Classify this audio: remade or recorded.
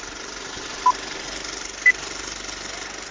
recorded